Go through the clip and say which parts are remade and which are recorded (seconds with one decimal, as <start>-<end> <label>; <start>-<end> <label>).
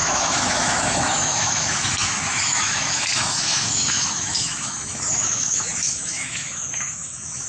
0.0-7.5 remade